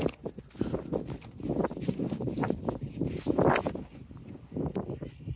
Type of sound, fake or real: real